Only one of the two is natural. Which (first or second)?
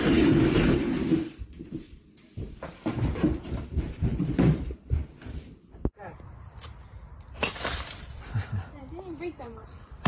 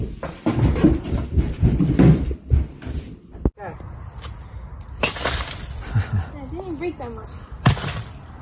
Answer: second